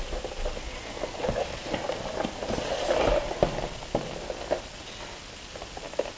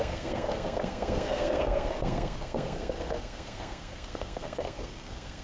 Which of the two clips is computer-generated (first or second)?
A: second